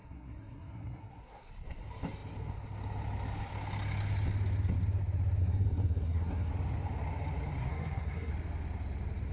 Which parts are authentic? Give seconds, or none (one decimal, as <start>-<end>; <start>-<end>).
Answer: 1.5-5.4; 6.5-7.6; 8.3-9.3